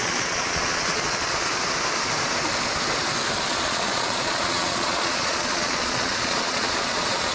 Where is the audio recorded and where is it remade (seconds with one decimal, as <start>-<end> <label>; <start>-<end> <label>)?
0.0-1.5 remade; 1.5-3.5 recorded; 3.5-7.3 remade

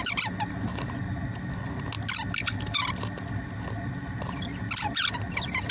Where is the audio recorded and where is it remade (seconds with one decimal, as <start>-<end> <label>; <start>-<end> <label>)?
0.0-5.7 recorded

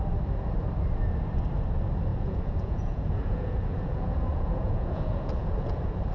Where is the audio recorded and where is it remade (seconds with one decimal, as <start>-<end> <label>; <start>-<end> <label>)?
0.0-2.1 recorded; 2.1-6.1 remade

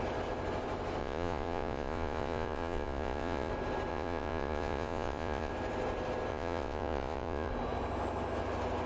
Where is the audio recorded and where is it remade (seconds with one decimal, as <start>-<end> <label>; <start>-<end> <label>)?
0.0-1.0 recorded; 1.0-3.5 remade; 3.5-3.9 recorded; 3.9-5.5 remade; 5.5-6.3 recorded; 6.3-7.5 remade; 7.5-8.9 recorded

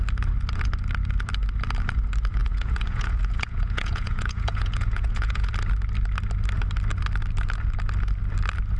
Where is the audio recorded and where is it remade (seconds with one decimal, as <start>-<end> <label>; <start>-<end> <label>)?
0.0-2.4 recorded; 2.4-5.5 remade; 5.5-8.8 recorded